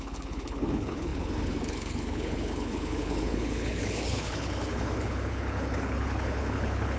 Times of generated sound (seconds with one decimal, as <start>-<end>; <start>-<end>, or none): 0.0-7.0